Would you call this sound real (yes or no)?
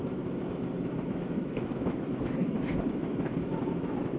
no